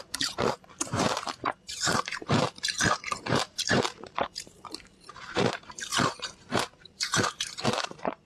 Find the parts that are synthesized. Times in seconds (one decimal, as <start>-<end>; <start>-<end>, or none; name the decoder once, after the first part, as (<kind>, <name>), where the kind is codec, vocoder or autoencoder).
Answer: 0.0-8.3 (vocoder, BigVGAN v2)